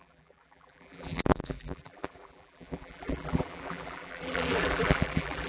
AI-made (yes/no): yes